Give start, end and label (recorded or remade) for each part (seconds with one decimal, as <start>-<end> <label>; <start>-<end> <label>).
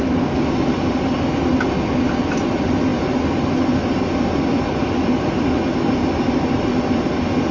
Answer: 0.0-7.5 recorded